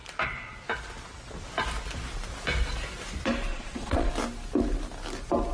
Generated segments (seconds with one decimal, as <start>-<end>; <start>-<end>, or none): 3.5-4.1